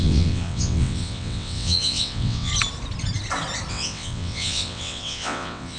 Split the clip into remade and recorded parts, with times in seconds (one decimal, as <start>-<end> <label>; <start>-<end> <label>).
0.0-2.5 remade; 2.5-3.7 recorded; 3.7-5.8 remade